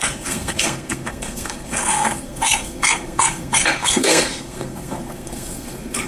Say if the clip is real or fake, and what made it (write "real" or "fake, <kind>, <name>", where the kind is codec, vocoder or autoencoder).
fake, codec, SNAC